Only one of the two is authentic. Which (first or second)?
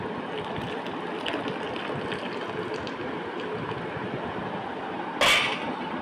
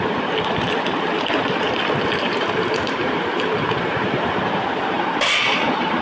first